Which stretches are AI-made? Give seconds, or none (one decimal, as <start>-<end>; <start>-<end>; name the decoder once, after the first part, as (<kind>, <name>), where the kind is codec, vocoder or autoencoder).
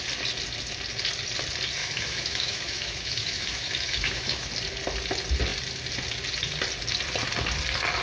1.8-4.5 (autoencoder, DAC-VAE)